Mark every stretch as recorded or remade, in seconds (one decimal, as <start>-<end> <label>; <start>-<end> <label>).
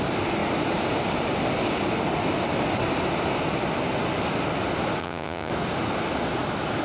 0.0-5.0 recorded; 5.0-5.5 remade; 5.5-6.8 recorded